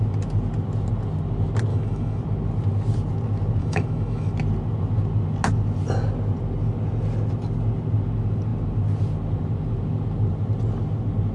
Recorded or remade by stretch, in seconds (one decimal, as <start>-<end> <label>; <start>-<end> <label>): 0.0-1.7 recorded; 1.7-2.2 remade; 2.2-3.6 recorded; 3.6-4.3 remade; 4.3-11.3 recorded